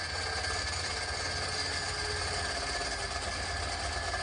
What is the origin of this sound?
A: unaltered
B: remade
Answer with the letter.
A